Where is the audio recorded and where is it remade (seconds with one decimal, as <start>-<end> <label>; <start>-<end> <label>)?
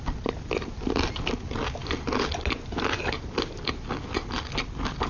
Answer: 0.0-5.1 recorded